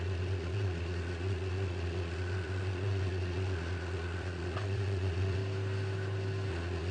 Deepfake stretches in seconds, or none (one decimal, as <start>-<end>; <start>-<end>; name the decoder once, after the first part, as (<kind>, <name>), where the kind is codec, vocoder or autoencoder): 0.0-5.4 (vocoder, Vocos); 6.5-6.9